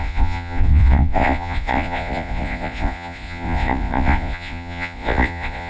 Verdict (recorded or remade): remade